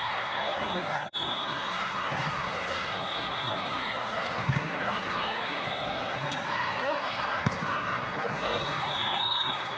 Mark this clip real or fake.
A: fake